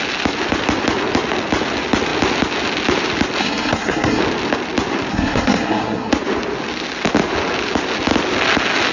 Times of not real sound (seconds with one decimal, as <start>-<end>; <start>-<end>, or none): 3.4-4.2; 5.1-6.1